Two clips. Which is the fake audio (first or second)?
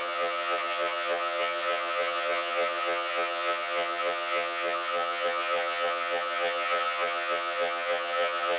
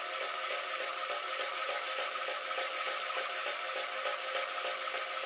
first